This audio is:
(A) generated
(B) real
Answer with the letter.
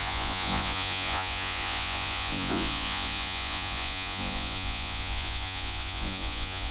A